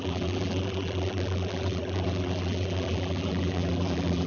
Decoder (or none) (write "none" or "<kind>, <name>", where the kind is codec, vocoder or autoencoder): vocoder, BigVGAN v2